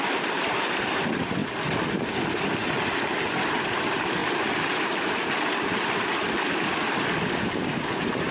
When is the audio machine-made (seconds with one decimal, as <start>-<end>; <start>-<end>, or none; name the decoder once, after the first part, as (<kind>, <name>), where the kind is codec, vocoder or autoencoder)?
none